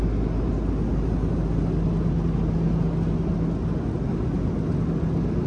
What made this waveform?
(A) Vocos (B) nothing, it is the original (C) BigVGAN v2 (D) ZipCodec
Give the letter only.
B